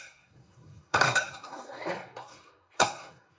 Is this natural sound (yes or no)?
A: no